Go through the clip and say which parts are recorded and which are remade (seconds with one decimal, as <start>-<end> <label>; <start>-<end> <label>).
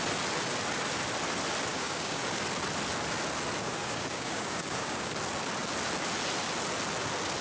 0.0-1.7 recorded; 1.7-2.2 remade; 2.2-3.6 recorded; 3.6-5.1 remade; 5.1-7.4 recorded